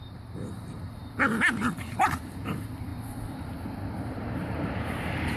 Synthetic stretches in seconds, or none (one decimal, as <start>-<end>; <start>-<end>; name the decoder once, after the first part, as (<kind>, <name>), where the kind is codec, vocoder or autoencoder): 0.0-1.0 (vocoder, BigVGAN v2); 2.2-2.9; 4.0-5.4